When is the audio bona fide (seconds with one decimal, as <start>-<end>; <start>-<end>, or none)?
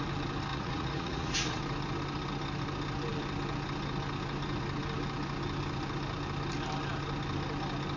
0.0-0.5; 1.6-8.0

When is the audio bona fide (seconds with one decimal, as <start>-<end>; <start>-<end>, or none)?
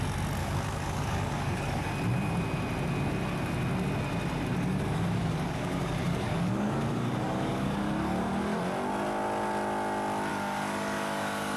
0.0-0.4; 1.9-4.5; 8.6-10.3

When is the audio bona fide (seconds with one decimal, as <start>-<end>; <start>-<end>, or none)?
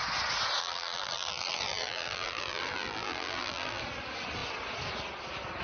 0.0-0.6; 3.8-5.6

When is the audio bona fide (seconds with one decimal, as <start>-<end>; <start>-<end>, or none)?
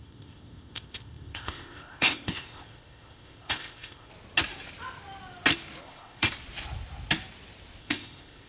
4.1-5.8; 6.3-7.8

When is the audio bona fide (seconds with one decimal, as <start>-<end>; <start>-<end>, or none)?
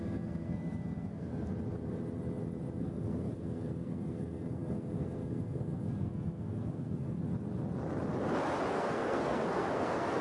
1.3-2.8; 7.2-8.7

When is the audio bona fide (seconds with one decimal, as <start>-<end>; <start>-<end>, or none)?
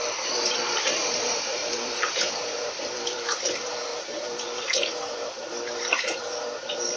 none